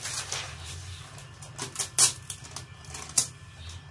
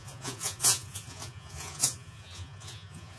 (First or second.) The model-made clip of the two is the second